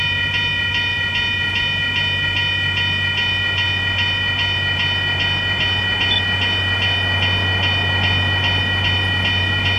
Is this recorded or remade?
recorded